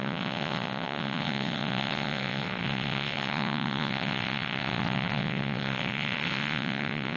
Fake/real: fake